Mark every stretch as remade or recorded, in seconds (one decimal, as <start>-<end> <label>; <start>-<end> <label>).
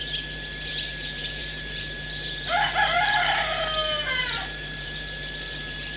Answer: 0.0-0.7 recorded; 0.7-6.0 remade